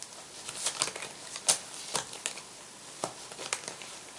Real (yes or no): yes